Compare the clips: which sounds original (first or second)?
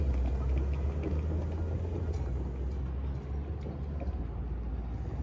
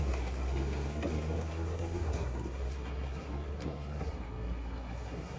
first